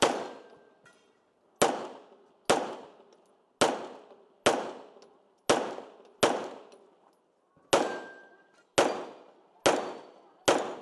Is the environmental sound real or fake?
real